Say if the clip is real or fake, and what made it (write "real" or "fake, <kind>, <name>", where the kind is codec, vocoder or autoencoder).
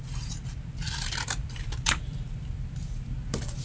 fake, vocoder, BigVGAN v2